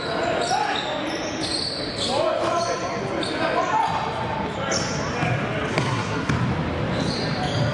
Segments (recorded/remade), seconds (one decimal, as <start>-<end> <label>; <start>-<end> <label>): 0.0-5.7 recorded; 5.7-6.3 remade; 6.3-7.7 recorded